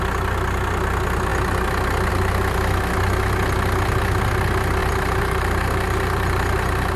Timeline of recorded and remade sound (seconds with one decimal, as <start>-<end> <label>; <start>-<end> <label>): 0.0-4.8 recorded; 4.8-7.0 remade